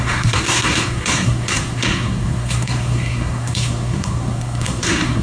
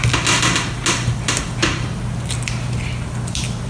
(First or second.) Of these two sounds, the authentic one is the second